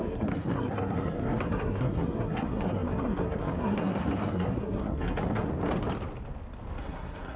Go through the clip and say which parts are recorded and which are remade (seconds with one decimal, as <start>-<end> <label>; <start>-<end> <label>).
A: 0.0-5.5 remade; 5.5-6.8 recorded; 6.8-7.4 remade